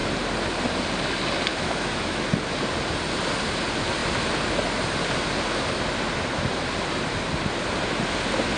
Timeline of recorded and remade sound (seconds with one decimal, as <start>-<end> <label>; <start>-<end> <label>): 0.0-1.5 recorded; 1.5-2.2 remade; 2.2-8.6 recorded